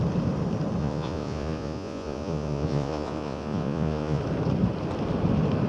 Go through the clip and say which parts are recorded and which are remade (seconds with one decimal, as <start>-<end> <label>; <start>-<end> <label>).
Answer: 0.0-0.8 recorded; 0.8-4.2 remade; 4.2-5.7 recorded